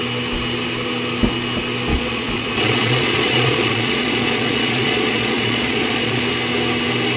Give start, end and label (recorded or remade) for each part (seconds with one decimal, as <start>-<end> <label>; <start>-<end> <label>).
0.0-1.9 recorded; 1.9-6.2 remade; 6.2-7.2 recorded